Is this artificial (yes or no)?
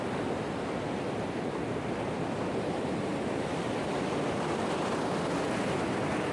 no